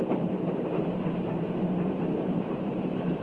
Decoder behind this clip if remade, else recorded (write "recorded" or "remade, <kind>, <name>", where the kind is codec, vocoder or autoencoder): remade, vocoder, BigVGAN v2